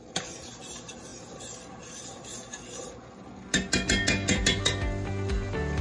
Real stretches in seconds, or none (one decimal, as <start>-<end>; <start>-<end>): 0.0-5.8